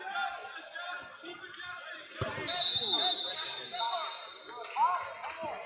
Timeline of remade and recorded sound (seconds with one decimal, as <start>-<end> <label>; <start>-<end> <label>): 0.0-5.7 recorded